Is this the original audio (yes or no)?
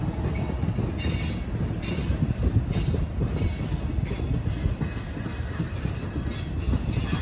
yes